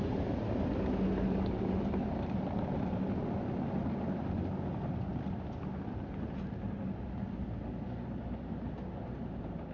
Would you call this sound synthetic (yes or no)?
no